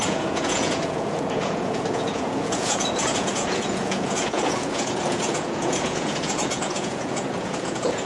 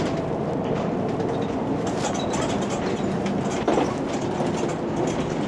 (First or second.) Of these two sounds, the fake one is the first